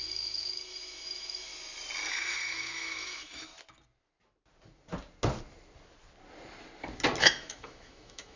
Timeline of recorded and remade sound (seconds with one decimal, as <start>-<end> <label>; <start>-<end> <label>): 0.0-1.5 remade; 1.5-2.1 recorded; 2.1-3.5 remade; 3.5-7.2 recorded; 7.2-8.4 remade